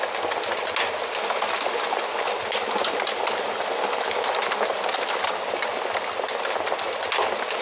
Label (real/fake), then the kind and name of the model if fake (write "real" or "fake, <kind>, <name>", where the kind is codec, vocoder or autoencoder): real